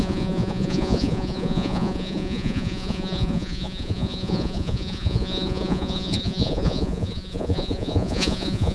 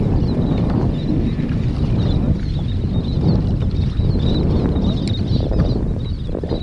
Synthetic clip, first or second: first